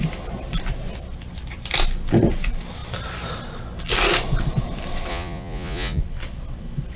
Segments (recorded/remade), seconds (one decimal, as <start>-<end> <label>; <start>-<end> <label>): 0.0-5.1 recorded; 5.1-6.0 remade; 6.0-7.0 recorded